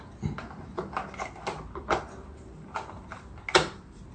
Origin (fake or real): real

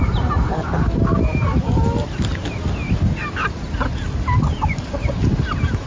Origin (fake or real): real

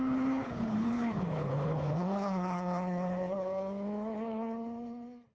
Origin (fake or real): fake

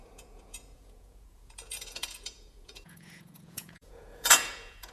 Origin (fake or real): fake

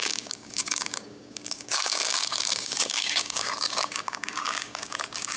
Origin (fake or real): fake